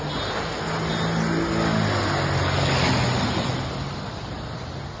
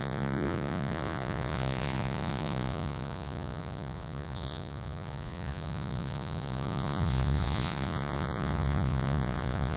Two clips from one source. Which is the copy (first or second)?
second